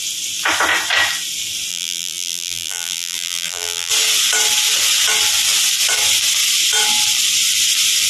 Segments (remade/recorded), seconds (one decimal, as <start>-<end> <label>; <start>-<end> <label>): 0.0-1.7 recorded; 1.7-3.9 remade; 3.9-8.1 recorded